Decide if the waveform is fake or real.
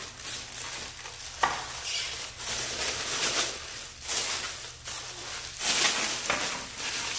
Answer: real